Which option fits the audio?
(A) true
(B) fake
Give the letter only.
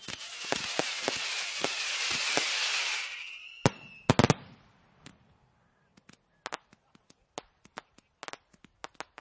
A